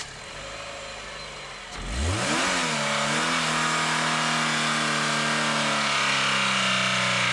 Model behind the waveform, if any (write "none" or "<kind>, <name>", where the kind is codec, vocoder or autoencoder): none